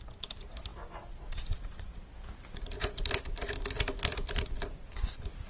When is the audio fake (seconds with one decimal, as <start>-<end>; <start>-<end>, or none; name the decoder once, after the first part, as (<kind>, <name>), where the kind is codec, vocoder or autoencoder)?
none